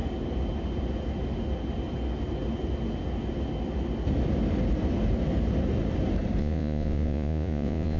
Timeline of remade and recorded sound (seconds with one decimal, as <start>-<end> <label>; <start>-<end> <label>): 0.0-6.4 recorded; 6.4-8.0 remade